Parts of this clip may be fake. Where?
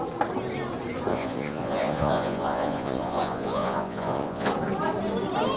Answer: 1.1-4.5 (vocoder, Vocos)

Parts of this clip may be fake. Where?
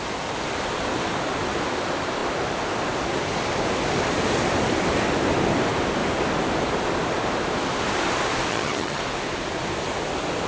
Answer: 8.5-9.0 (vocoder, HiFi-GAN)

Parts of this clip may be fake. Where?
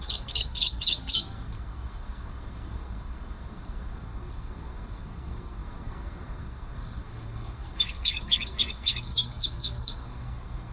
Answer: 0.0-10.7 (codec, SNAC)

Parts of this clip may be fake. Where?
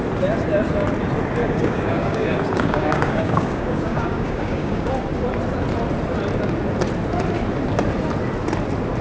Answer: 1.4-4.9 (codec, DAC)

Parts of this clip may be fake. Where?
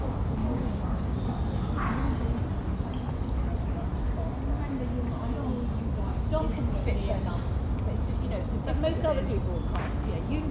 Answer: 0.4-1.2 (codec, DAC)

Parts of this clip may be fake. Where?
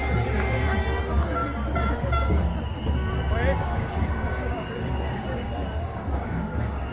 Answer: 0.0-1.4 (codec, DAC); 1.9-2.5; 3.6-6.9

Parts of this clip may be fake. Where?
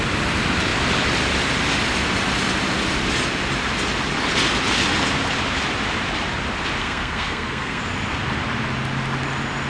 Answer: 6.8-7.8 (codec, SNAC)